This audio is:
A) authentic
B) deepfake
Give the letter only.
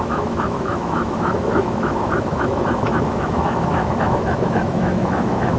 B